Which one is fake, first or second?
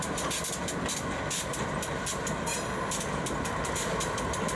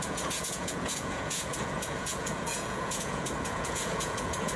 second